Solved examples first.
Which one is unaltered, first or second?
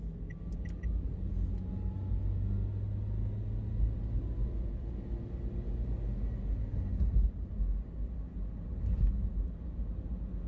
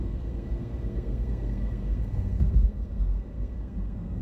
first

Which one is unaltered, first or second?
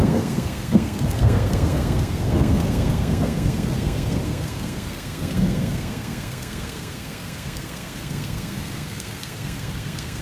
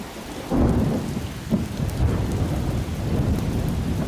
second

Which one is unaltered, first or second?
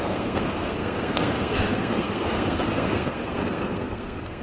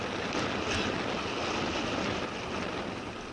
second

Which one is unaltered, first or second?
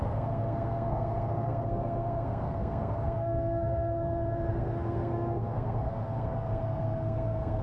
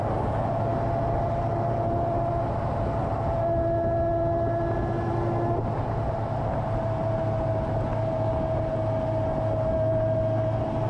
second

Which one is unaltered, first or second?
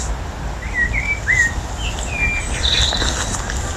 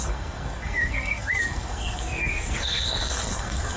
first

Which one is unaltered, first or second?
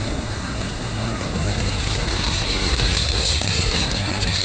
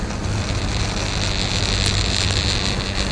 second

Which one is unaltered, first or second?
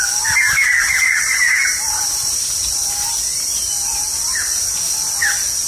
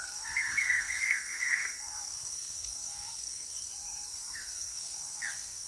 first